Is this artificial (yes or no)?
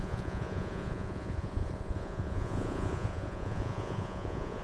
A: yes